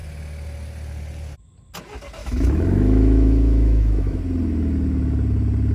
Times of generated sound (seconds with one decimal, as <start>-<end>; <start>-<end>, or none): 2.2-4.2